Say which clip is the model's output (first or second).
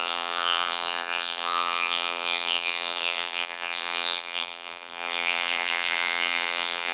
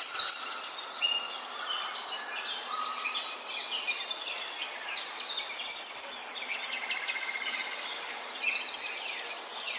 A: first